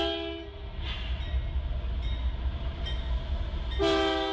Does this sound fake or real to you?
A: real